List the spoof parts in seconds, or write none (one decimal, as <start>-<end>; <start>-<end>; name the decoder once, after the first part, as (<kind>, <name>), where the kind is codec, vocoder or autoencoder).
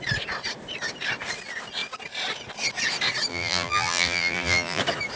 3.3-4.8 (vocoder, BigVGAN v2)